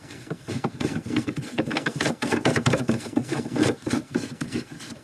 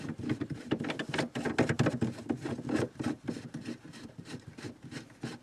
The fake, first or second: first